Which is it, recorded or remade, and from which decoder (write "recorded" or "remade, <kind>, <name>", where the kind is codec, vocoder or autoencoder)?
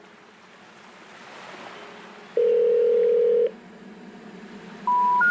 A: recorded